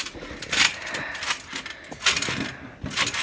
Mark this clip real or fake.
real